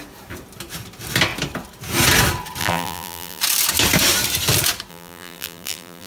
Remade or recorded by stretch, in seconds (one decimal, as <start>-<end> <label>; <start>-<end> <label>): 0.0-2.6 recorded; 2.6-3.4 remade; 3.4-4.9 recorded; 4.9-6.1 remade